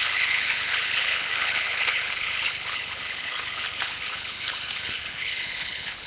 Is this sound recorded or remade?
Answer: remade